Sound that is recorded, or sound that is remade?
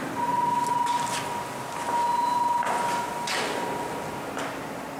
recorded